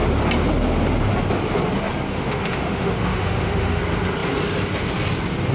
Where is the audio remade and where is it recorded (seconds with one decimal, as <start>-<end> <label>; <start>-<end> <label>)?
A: 0.0-2.1 recorded; 2.1-3.8 remade; 3.8-5.5 recorded